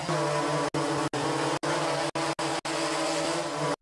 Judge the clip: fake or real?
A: real